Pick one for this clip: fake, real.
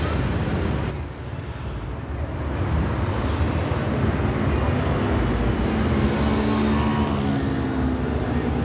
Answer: real